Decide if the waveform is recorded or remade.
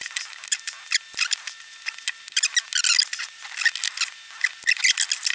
recorded